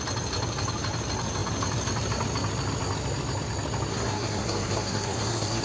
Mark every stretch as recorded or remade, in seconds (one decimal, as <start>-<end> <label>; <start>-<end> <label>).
0.0-3.9 recorded; 3.9-5.6 remade